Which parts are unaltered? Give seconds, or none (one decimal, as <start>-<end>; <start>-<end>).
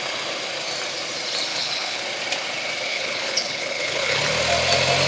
0.0-1.5; 2.0-2.9; 4.2-5.1